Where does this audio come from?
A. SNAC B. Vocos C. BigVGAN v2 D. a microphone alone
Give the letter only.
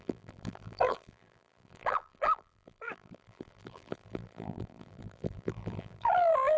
C